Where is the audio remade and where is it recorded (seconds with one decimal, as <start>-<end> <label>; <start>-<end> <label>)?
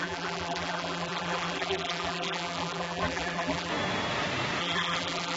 0.0-3.7 remade; 3.7-4.6 recorded; 4.6-5.4 remade